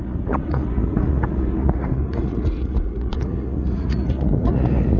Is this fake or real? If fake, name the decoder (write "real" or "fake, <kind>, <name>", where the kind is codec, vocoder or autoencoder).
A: fake, vocoder, Vocos